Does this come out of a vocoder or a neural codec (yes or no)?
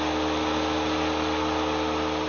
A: no